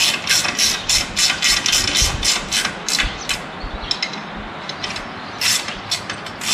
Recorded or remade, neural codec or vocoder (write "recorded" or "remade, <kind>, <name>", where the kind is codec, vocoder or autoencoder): recorded